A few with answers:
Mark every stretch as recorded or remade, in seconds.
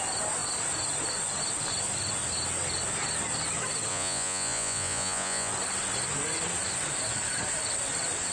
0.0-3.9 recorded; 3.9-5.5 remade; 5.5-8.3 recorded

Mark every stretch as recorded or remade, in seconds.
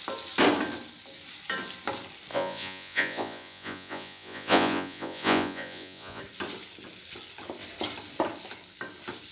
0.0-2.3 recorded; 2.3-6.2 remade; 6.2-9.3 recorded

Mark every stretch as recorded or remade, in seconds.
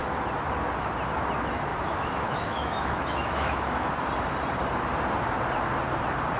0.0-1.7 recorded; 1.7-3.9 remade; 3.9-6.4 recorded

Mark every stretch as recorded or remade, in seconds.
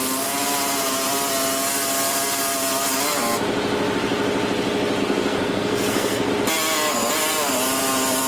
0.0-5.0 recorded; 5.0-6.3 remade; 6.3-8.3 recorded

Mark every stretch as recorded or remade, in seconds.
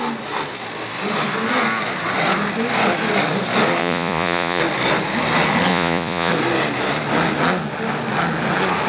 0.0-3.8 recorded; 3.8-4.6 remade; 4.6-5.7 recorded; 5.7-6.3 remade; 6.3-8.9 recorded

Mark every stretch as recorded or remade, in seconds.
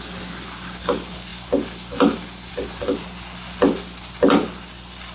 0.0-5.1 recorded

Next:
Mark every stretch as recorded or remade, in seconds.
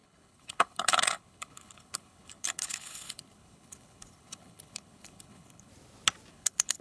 0.0-5.7 remade; 5.7-6.3 recorded; 6.3-6.8 remade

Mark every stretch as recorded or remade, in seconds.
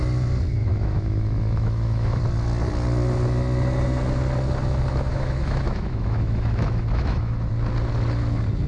0.0-0.6 recorded; 0.6-2.2 remade; 2.2-5.1 recorded; 5.1-7.5 remade; 7.5-8.7 recorded